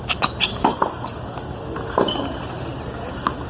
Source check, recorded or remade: recorded